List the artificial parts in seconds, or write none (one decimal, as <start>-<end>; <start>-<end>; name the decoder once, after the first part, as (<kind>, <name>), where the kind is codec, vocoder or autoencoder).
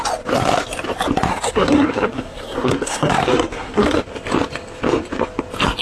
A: 1.3-4.0 (codec, SNAC)